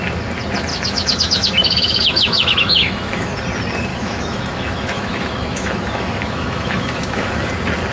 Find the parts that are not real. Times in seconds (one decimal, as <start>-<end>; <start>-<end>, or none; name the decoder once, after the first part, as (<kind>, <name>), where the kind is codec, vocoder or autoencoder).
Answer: 0.7-3.3 (autoencoder, DAC-VAE); 3.9-7.3